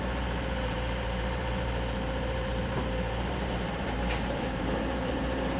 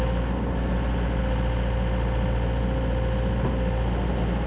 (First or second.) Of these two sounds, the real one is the second